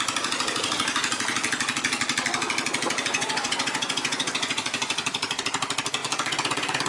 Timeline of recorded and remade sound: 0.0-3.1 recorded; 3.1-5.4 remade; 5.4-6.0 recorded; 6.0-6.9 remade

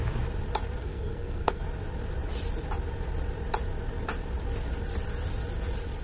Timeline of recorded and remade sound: 0.0-0.8 recorded; 0.8-1.6 remade; 1.6-6.0 recorded